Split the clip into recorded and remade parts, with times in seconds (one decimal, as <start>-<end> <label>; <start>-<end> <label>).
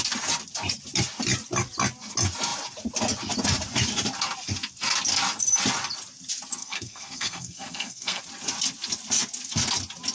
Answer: 0.0-6.6 recorded; 6.6-8.2 remade; 8.2-10.1 recorded